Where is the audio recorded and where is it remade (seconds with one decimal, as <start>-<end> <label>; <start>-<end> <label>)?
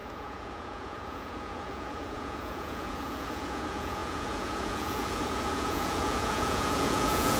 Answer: 0.0-7.4 remade